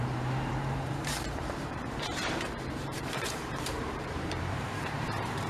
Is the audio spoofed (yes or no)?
yes